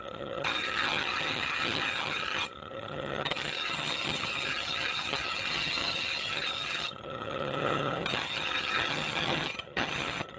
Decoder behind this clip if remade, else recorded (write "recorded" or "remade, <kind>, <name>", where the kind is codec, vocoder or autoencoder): remade, vocoder, HiFi-GAN